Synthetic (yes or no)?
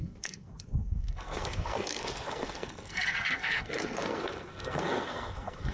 yes